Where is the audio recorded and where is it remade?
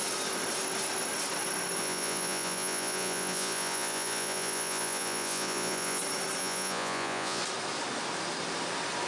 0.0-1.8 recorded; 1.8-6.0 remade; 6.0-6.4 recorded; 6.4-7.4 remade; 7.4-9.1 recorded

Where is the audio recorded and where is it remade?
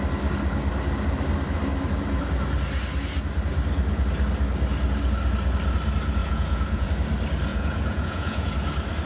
0.0-6.2 recorded; 6.2-6.9 remade; 6.9-7.5 recorded; 7.5-8.5 remade; 8.5-9.1 recorded